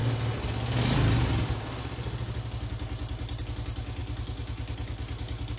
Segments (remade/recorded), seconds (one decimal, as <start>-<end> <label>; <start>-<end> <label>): 0.0-5.6 recorded

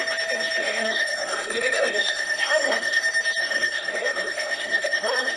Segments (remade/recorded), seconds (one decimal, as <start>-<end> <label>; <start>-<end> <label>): 0.0-0.6 recorded; 0.6-3.0 remade; 3.0-3.4 recorded; 3.4-5.4 remade

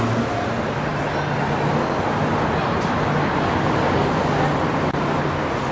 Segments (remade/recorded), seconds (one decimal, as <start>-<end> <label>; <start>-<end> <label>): 0.0-5.7 recorded

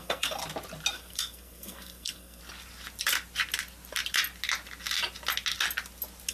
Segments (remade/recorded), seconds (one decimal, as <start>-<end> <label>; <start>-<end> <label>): 0.0-0.4 remade; 0.4-0.9 recorded; 0.9-2.4 remade; 2.4-6.3 recorded

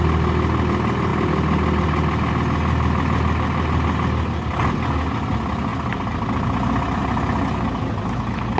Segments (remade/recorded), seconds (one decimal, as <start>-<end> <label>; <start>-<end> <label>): 0.0-8.6 recorded

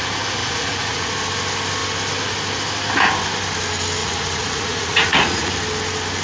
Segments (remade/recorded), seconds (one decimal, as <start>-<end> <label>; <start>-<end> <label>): 0.0-0.4 recorded; 0.4-1.1 remade; 1.1-4.0 recorded; 4.0-5.5 remade; 5.5-6.2 recorded